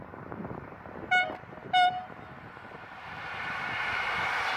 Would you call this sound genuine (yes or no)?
no